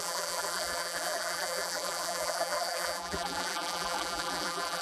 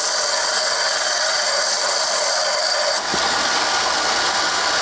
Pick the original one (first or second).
second